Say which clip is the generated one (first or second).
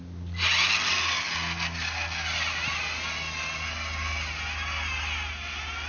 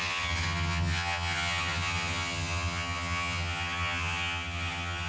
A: second